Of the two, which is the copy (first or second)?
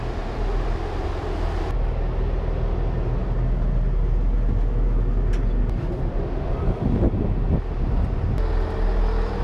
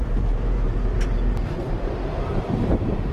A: second